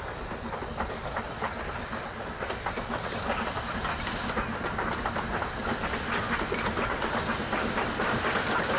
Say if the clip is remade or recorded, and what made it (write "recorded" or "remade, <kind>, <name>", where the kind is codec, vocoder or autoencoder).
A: recorded